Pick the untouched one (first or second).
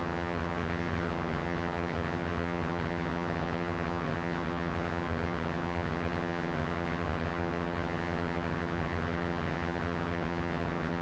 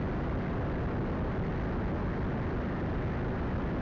second